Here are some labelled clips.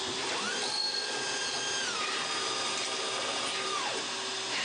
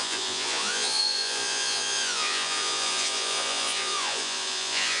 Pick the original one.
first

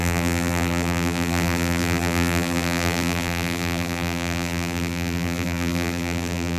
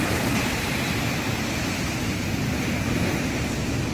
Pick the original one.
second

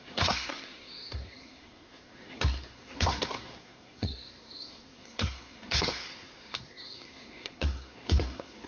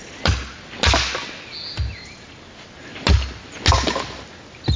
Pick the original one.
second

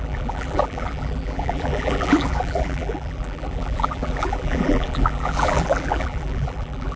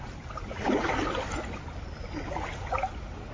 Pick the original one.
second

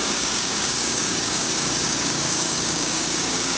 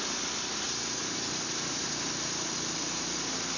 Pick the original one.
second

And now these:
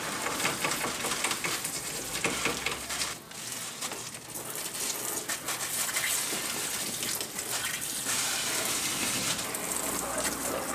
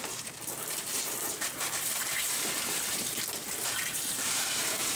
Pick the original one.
first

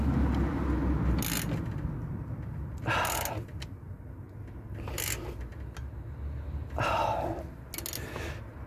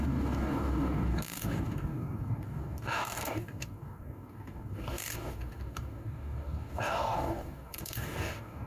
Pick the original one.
first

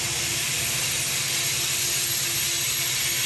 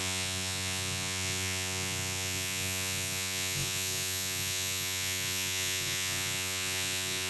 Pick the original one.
first